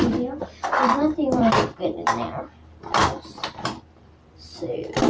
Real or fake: fake